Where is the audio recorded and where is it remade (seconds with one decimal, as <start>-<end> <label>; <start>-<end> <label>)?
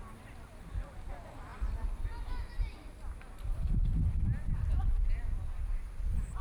0.0-2.4 recorded; 2.4-3.2 remade; 3.2-4.3 recorded; 4.3-6.4 remade